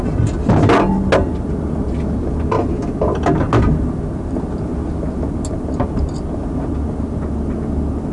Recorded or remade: recorded